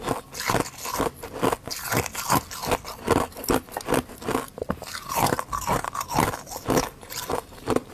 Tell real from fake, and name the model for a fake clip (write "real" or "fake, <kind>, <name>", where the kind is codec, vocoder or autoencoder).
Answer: real